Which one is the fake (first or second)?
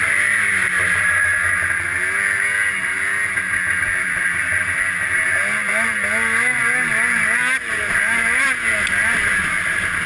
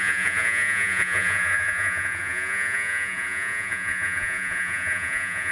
second